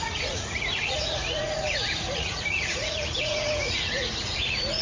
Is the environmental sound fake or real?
fake